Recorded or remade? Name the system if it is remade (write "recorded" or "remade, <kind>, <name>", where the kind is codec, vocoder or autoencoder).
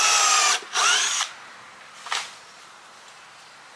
recorded